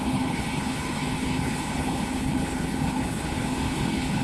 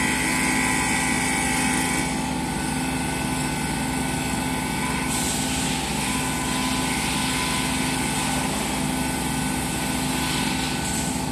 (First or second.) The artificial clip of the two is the first